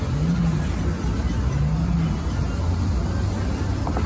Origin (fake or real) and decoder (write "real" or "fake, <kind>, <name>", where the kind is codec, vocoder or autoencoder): real